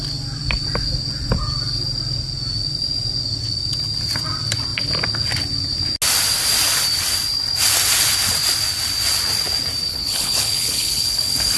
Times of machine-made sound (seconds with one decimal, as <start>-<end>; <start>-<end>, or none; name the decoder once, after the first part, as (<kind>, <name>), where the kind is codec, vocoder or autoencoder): 9.9-11.6 (codec, HILCodec)